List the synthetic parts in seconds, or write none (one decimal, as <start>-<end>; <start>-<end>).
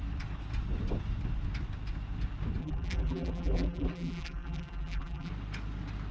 2.6-5.3